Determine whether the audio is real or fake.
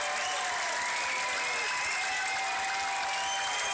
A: real